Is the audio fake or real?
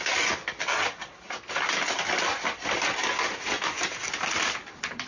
real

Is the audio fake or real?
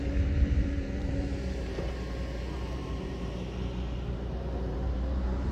fake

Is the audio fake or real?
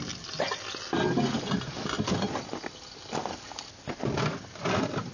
real